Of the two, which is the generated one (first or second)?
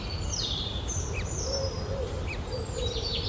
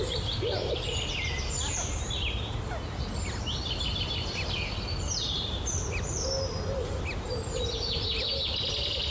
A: first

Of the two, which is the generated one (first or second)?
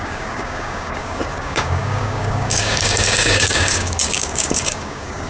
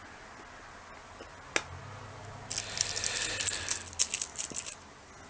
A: first